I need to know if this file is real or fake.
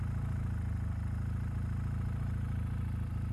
real